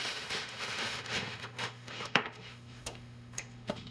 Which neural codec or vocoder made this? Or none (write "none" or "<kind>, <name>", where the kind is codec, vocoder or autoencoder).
autoencoder, DAC-VAE